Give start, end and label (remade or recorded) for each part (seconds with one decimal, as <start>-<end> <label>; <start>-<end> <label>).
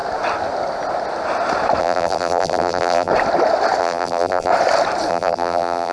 0.0-1.8 recorded; 1.8-3.1 remade; 3.1-3.8 recorded; 3.8-4.5 remade; 4.5-5.1 recorded; 5.1-5.9 remade